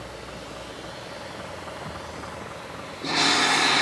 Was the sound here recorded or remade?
recorded